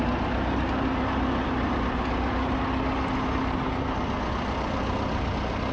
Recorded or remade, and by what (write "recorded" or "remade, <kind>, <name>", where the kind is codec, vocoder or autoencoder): recorded